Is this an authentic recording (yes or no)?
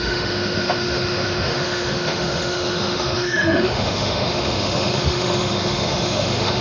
no